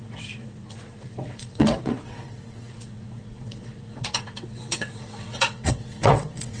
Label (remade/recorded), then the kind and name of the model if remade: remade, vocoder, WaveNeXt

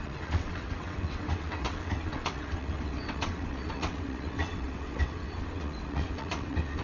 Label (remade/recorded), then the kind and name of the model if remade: remade, vocoder, WaveNeXt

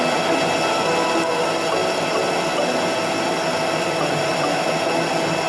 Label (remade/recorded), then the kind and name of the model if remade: recorded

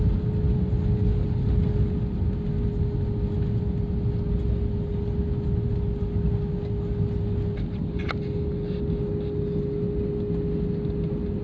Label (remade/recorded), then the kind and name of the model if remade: recorded